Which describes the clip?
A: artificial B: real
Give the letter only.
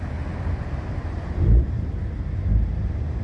A